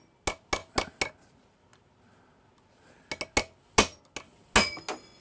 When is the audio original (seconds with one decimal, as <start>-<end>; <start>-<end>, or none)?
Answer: 0.0-5.2